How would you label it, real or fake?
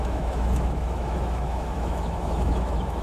fake